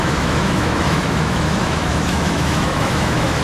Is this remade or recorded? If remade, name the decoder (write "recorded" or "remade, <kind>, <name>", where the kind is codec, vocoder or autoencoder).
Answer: remade, autoencoder, DAC-VAE